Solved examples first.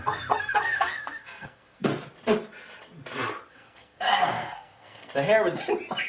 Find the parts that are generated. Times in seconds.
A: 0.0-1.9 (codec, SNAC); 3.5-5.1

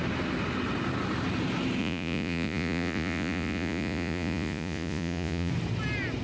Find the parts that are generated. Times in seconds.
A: 1.8-5.5 (vocoder, Vocos)